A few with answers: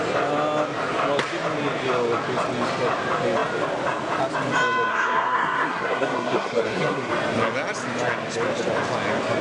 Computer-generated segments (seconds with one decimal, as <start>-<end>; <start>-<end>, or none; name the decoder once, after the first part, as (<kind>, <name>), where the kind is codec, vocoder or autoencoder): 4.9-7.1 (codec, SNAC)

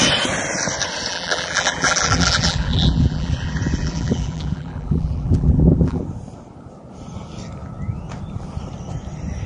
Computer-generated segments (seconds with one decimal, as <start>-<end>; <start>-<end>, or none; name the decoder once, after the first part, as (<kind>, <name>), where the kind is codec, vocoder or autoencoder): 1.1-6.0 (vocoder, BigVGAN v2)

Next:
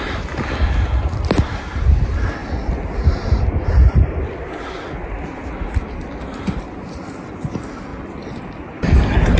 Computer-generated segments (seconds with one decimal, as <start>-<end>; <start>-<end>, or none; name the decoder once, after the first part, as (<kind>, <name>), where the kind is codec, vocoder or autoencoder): none

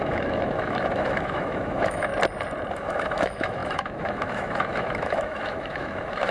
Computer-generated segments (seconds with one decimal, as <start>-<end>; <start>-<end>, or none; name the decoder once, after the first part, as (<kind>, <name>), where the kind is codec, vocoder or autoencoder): 0.0-2.1 (autoencoder, DAC-VAE); 2.7-6.3

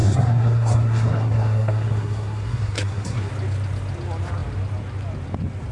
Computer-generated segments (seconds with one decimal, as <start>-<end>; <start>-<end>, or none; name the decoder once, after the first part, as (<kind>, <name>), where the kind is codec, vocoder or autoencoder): 0.0-3.3 (codec, SNAC)